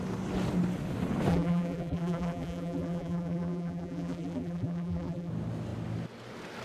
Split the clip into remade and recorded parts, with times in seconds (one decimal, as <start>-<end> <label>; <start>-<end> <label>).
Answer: 0.0-1.3 recorded; 1.3-5.3 remade; 5.3-6.6 recorded